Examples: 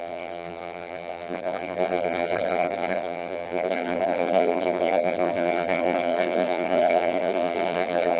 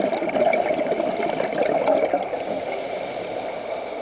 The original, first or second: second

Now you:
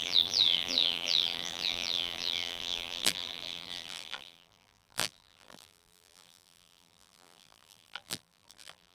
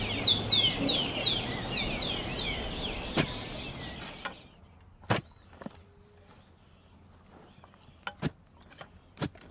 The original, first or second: second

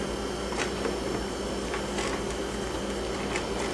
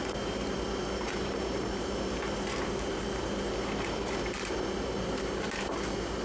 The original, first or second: first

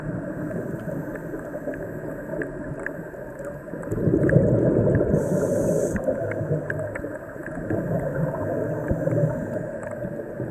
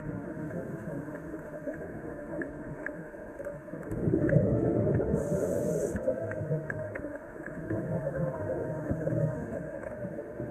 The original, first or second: first